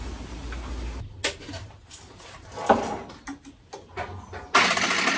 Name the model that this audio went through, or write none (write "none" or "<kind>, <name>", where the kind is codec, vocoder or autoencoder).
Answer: none